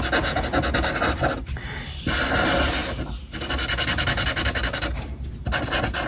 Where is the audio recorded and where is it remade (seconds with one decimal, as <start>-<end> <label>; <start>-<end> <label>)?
0.0-6.1 recorded